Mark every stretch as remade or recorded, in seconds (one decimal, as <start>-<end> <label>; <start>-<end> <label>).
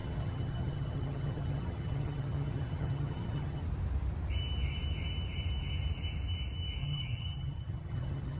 0.0-3.6 remade; 3.6-6.8 recorded; 6.8-8.4 remade